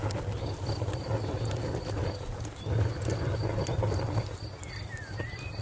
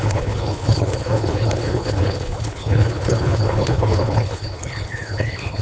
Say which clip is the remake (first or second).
second